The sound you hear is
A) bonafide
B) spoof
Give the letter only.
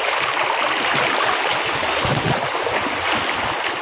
A